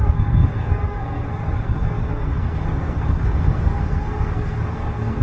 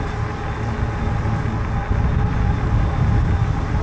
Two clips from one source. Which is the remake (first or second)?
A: first